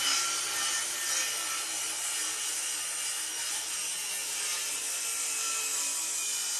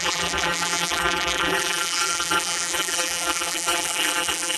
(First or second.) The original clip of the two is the first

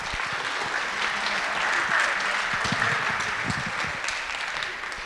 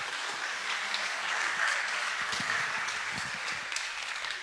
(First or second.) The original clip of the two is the first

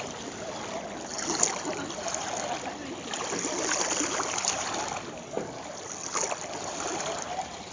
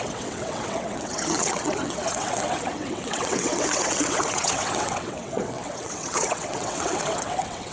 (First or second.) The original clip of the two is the first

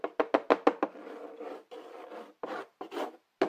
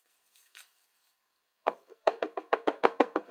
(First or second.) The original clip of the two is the first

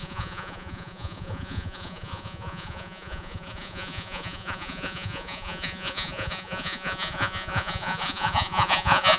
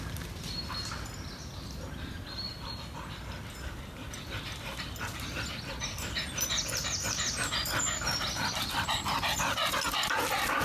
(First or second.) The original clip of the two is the second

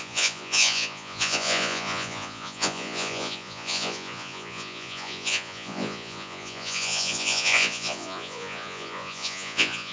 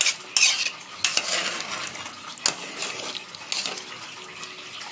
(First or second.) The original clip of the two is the second